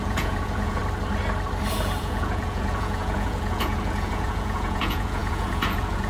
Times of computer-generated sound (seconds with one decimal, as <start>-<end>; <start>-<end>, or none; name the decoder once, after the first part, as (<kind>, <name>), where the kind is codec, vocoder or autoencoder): 0.0-0.8 (vocoder, Vocos); 2.0-6.1